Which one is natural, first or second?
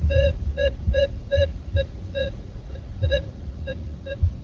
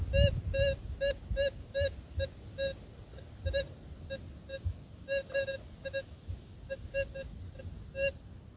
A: second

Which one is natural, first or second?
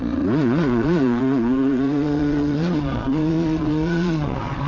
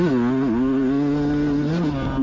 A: second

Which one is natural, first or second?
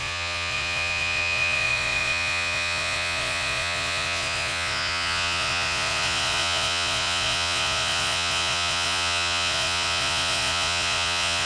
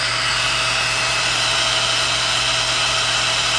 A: second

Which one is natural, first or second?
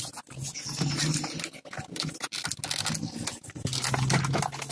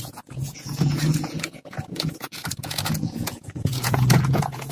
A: first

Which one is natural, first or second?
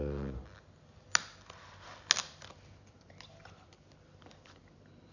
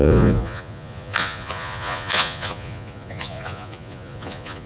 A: first